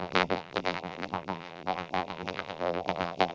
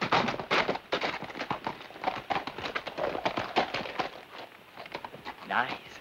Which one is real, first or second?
second